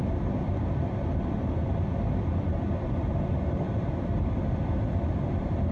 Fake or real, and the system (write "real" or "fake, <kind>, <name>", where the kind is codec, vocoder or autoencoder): fake, vocoder, BigVGAN v2